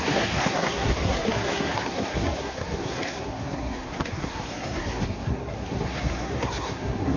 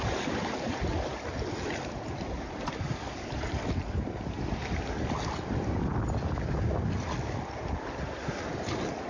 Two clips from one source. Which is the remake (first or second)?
first